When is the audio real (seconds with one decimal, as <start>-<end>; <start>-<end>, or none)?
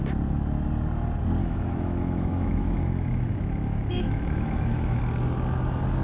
0.0-1.4; 5.0-6.0